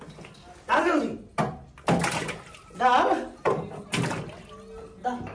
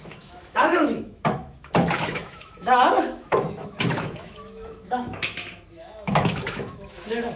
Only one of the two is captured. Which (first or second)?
first